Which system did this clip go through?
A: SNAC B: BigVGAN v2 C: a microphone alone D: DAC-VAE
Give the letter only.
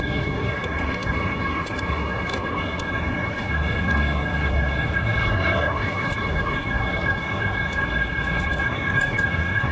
A